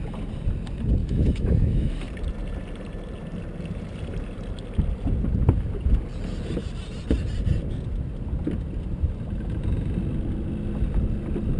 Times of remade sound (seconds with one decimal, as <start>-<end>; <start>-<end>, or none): 1.0-1.9